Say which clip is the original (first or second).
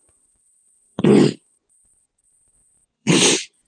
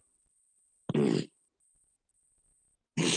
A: second